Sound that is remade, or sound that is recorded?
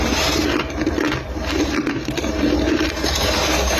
remade